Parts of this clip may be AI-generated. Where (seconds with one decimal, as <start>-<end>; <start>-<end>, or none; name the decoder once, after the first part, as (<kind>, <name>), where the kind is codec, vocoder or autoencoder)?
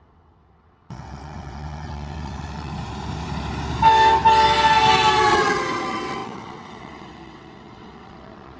0.0-2.7 (vocoder, WaveNeXt); 5.3-8.6